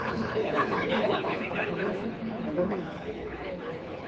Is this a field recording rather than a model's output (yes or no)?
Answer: no